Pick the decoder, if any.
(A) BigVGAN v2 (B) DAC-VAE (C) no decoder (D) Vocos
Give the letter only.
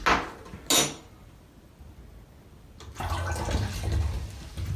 C